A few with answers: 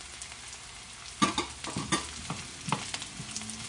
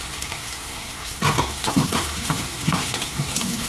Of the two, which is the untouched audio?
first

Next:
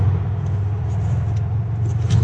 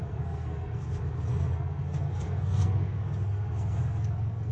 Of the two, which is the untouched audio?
first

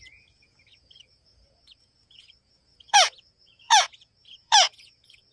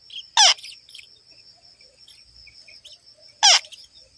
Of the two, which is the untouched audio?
second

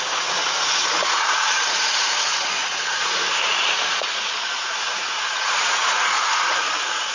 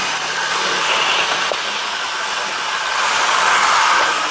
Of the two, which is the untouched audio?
second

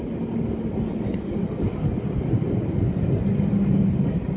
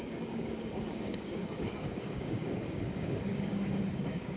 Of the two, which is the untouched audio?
first